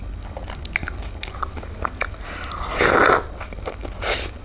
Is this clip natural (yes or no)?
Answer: yes